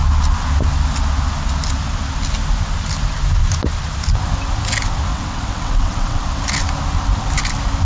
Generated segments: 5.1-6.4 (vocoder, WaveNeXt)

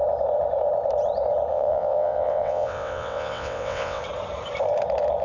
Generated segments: 1.5-4.0 (vocoder, WaveNeXt)

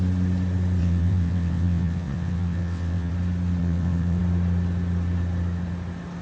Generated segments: 0.8-3.1 (vocoder, WaveNeXt); 3.6-4.2